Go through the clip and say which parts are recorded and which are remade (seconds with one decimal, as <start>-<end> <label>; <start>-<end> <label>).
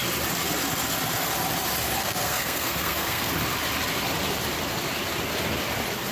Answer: 0.0-2.0 recorded; 2.0-3.3 remade; 3.3-6.1 recorded